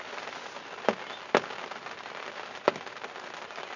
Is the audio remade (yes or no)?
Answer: no